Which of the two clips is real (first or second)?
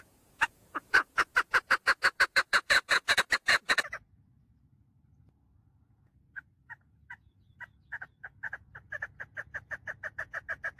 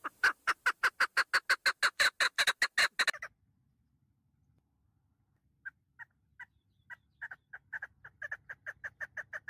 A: second